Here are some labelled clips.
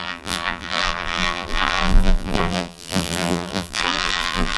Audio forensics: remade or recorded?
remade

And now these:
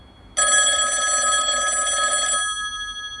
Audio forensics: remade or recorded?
recorded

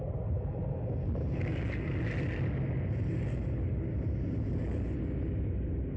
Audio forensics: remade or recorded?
recorded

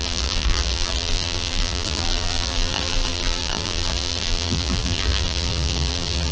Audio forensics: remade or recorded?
remade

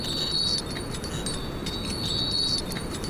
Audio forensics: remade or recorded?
recorded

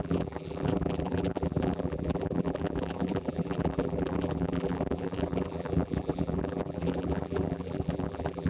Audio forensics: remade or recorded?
remade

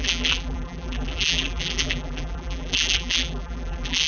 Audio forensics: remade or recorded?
remade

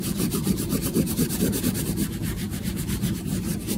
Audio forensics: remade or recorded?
remade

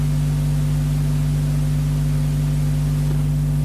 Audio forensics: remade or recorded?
recorded